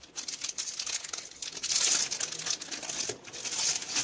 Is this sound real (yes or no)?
yes